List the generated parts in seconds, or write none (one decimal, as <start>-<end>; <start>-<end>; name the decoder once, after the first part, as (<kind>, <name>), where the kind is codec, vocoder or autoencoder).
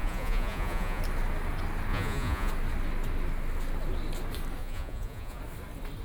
0.0-1.0 (vocoder, Vocos); 1.9-2.5; 4.6-5.4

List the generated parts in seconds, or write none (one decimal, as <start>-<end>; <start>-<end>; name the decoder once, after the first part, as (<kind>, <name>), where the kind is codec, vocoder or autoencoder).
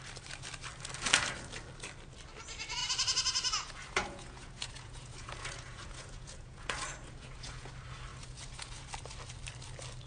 2.8-7.7 (vocoder, Vocos); 8.1-8.9